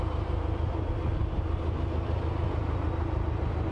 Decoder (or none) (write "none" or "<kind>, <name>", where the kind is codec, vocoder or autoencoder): none